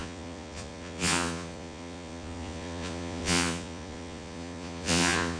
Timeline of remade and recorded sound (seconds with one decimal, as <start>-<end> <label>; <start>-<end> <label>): 0.0-5.4 remade